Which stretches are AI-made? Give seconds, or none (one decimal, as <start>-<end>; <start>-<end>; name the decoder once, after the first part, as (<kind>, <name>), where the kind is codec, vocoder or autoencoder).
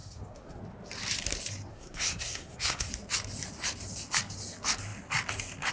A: 0.0-0.6 (codec, SNAC); 1.7-2.9